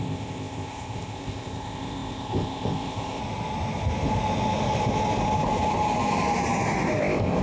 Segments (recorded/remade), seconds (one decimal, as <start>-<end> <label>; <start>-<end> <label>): 0.0-3.2 remade; 3.2-7.0 recorded; 7.0-7.4 remade

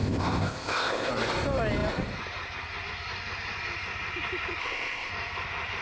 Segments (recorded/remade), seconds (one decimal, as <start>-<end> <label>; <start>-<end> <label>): 0.0-1.1 remade; 1.1-4.6 recorded; 4.6-5.1 remade; 5.1-5.8 recorded

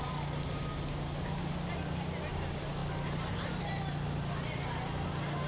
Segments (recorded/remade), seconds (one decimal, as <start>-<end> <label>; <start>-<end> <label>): 0.0-5.5 recorded

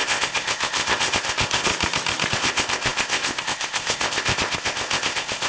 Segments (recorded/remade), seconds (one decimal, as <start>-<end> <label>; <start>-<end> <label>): 0.0-1.7 remade; 1.7-2.3 recorded; 2.3-5.5 remade

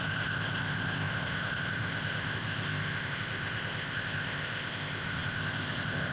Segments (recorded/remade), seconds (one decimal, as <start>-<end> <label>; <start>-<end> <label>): 0.0-6.1 remade

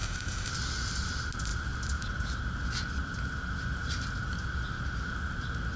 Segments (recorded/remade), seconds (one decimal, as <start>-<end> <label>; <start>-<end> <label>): 0.0-0.5 remade; 0.5-5.8 recorded

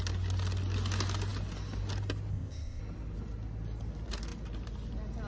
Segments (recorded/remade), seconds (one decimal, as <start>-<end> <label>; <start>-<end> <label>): 0.0-2.3 recorded; 2.3-2.8 remade; 2.8-5.3 recorded

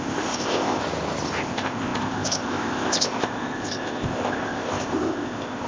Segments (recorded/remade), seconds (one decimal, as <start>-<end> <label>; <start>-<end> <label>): 0.0-0.8 remade; 0.8-1.4 recorded; 1.4-5.7 remade